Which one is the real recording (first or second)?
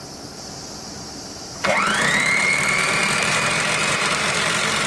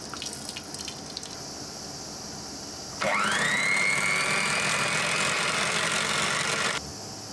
second